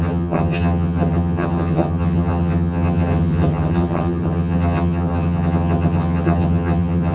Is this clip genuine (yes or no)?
no